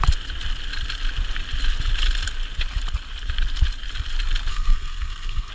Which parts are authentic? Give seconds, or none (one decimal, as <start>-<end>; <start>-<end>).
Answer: 0.0-4.5